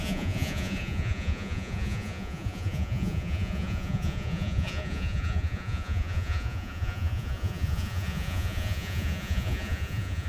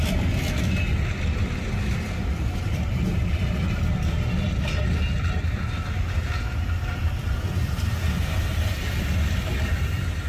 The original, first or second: second